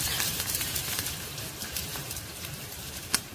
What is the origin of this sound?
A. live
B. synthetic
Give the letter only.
B